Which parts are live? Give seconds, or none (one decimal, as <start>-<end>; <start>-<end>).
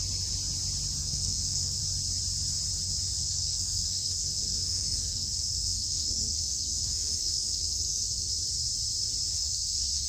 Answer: 0.0-1.0; 1.8-3.2; 8.3-9.3